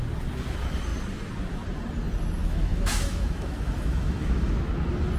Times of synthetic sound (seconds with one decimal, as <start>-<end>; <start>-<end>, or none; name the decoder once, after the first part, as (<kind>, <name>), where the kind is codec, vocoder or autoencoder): 2.4-4.5 (autoencoder, DAC-VAE)